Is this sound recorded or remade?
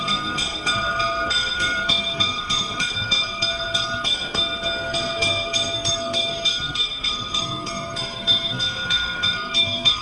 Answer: remade